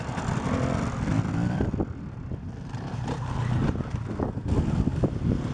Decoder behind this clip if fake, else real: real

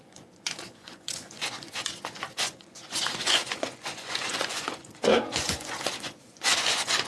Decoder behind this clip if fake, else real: fake, vocoder, Vocos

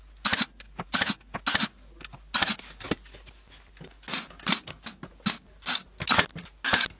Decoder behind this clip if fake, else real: real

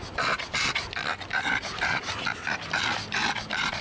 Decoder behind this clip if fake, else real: real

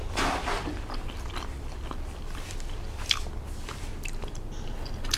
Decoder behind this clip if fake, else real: real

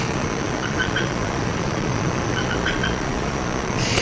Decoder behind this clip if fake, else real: fake, vocoder, Vocos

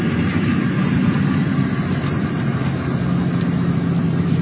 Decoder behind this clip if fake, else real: real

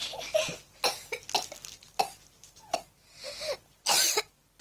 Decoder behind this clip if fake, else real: real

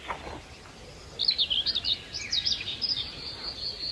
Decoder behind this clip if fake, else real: real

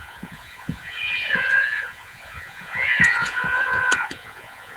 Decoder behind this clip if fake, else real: fake, vocoder, Vocos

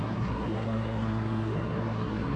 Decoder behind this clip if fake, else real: fake, codec, SNAC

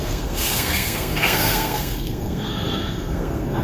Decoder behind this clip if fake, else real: fake, codec, SNAC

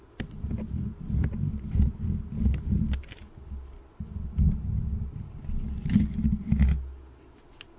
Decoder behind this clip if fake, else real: real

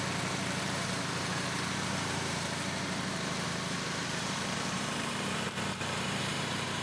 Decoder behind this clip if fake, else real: fake, vocoder, BigVGAN v2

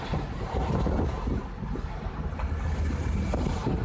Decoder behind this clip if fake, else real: real